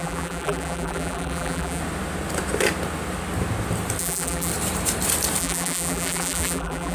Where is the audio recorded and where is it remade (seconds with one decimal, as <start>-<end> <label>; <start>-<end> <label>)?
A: 0.0-1.8 remade; 1.8-4.0 recorded; 4.0-4.5 remade; 4.5-5.4 recorded; 5.4-6.9 remade